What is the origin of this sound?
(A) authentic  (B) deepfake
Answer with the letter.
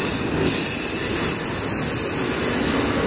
A